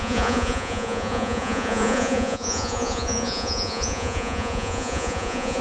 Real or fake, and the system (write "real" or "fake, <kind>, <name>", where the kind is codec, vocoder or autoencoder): fake, vocoder, Vocos